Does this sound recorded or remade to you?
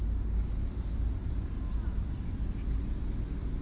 recorded